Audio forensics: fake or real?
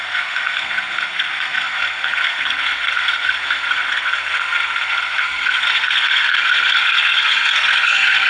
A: fake